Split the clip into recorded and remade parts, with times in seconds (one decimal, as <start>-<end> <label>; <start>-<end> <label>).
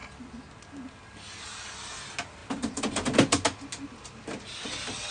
0.0-5.1 recorded